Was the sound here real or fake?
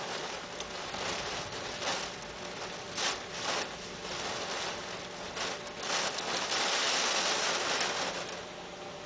real